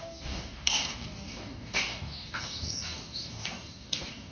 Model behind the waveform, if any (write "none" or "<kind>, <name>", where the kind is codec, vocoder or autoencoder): codec, DAC